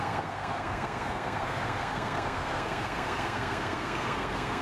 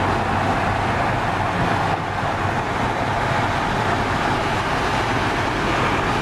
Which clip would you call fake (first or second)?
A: first